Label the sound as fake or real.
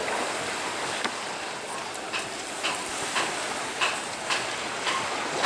real